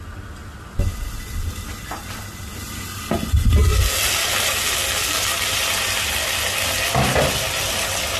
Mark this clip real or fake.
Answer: real